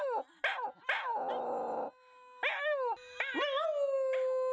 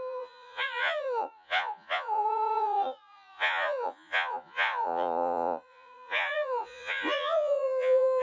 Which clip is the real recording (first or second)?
first